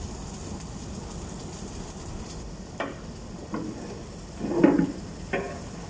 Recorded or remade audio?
recorded